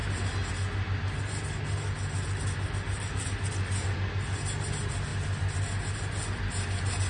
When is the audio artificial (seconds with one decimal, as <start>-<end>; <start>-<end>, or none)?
none